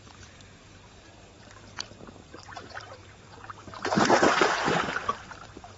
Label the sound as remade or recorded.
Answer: remade